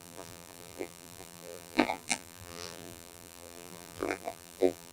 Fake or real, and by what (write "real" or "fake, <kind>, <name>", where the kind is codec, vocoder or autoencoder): fake, vocoder, BigVGAN v2